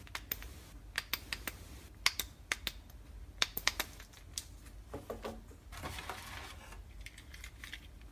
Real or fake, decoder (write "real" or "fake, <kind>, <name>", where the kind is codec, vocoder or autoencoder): real